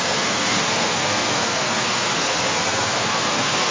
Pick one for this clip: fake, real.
fake